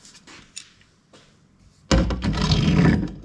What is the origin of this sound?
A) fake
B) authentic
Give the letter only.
B